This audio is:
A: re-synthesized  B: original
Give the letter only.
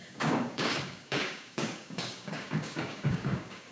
A